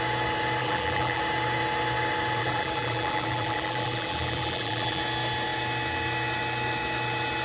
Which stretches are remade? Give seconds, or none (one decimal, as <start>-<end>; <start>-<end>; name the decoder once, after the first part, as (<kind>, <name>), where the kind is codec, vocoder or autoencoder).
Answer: 0.6-1.2 (vocoder, BigVGAN v2); 2.4-5.0